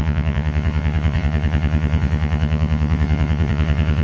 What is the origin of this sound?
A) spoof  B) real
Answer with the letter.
A